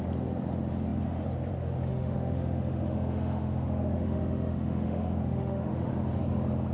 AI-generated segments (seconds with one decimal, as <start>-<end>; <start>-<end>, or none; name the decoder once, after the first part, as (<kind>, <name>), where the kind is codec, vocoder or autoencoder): 1.9-5.9 (autoencoder, DAC-VAE)